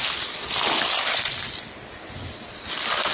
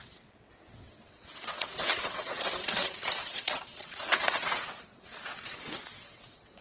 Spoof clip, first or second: second